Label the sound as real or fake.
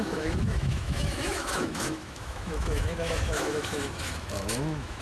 fake